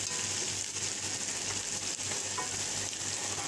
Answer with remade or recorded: recorded